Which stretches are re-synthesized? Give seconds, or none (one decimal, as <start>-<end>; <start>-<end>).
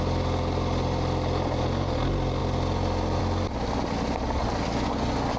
none